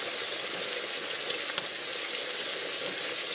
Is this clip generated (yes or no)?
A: no